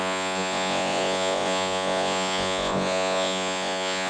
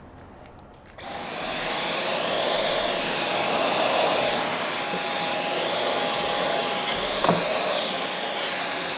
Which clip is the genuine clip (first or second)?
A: second